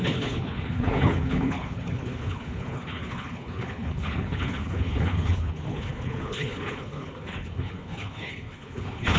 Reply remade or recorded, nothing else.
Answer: remade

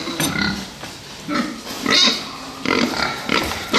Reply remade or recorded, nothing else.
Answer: remade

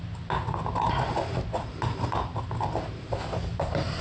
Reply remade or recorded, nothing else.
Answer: recorded